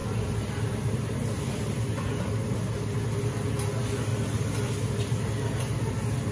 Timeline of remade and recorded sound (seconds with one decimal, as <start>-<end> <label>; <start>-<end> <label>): 0.0-6.3 recorded